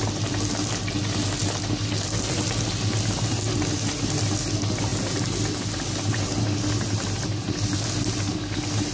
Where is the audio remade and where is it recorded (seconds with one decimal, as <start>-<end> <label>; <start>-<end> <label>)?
0.0-8.9 recorded